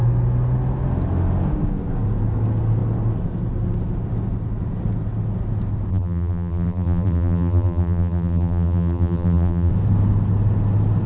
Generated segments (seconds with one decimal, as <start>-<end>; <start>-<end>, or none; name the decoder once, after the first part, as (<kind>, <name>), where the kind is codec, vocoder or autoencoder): 5.9-9.7 (vocoder, BigVGAN v2)